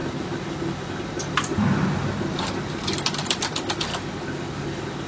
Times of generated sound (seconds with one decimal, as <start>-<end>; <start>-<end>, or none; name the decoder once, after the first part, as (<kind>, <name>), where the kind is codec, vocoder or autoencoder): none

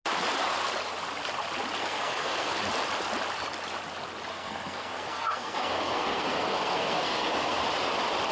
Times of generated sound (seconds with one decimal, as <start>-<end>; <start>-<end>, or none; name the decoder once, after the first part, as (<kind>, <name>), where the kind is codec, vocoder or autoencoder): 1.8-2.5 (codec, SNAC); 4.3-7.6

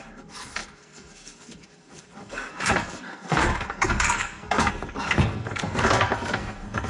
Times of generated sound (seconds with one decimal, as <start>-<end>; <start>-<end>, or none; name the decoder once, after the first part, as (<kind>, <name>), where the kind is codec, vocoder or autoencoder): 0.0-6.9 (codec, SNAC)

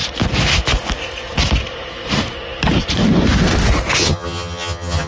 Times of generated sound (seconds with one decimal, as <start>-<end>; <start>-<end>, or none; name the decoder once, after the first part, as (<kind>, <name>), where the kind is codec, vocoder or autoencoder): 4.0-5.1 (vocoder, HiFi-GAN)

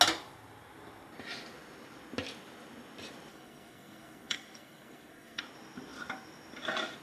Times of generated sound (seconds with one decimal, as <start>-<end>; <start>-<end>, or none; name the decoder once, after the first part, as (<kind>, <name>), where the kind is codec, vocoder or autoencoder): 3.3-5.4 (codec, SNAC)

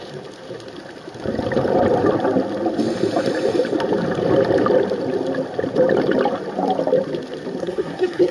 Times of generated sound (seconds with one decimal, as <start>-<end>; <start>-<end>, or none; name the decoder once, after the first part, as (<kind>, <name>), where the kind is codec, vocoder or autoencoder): 7.6-8.3 (codec, SNAC)

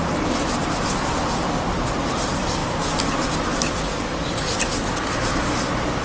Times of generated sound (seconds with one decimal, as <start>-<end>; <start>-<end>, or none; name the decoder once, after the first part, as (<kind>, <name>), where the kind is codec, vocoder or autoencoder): none